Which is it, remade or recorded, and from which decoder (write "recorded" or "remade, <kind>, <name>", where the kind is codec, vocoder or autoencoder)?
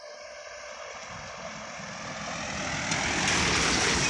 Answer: recorded